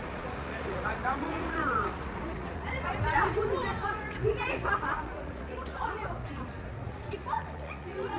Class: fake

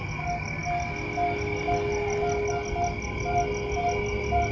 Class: real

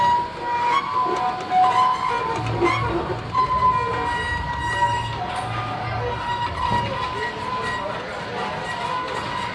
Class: real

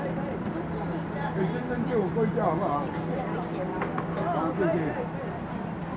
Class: real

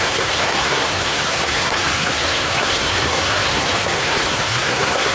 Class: fake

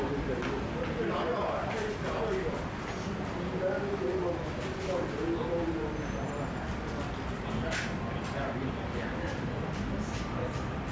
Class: real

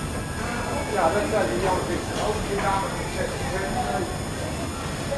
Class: real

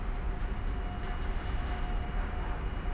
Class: real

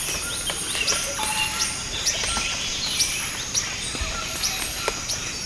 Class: real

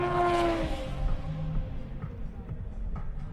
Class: real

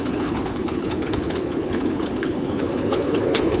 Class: fake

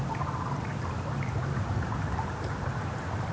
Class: fake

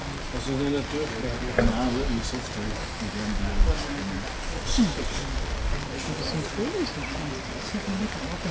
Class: real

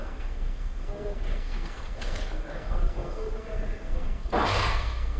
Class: fake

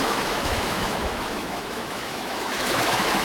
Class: fake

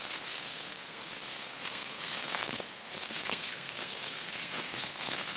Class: fake